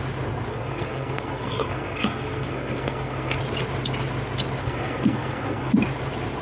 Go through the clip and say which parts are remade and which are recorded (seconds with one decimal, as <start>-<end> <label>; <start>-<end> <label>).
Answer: 0.0-0.5 recorded; 0.5-3.4 remade; 3.4-4.6 recorded; 4.6-5.7 remade; 5.7-6.4 recorded